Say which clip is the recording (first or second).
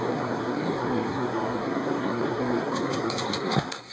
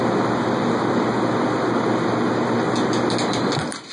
second